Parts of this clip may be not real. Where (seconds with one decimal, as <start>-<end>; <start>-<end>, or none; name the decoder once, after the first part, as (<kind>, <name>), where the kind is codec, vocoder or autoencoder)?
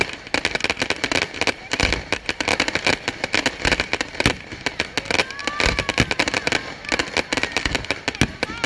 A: none